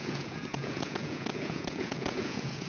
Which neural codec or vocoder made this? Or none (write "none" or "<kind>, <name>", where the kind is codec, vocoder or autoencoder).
vocoder, Vocos